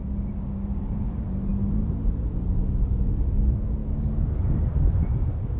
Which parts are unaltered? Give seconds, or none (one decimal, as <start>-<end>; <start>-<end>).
0.0-5.6